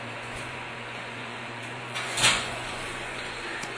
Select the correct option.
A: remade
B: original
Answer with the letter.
A